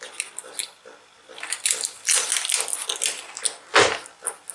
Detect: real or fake real